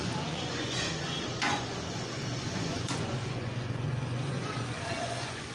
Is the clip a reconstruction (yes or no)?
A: yes